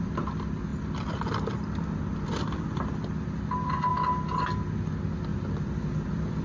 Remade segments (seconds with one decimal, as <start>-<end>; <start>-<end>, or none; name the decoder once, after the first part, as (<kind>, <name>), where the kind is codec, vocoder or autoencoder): 0.7-2.8 (vocoder, BigVGAN v2); 5.3-6.4

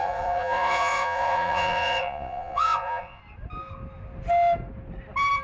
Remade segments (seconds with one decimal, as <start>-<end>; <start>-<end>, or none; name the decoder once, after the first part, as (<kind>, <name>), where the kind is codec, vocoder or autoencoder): 0.0-3.2 (vocoder, Vocos)